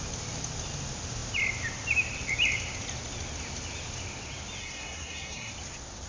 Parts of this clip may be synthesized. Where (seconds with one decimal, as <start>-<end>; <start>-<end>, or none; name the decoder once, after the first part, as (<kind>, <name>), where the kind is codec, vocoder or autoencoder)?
4.6-5.5 (codec, SNAC)